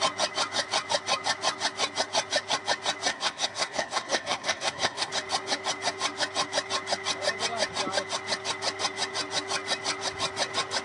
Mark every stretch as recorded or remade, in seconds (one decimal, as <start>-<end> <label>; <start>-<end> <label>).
0.0-3.1 recorded; 3.1-5.1 remade; 5.1-10.8 recorded